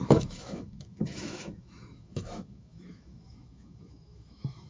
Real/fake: fake